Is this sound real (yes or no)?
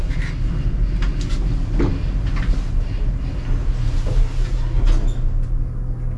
yes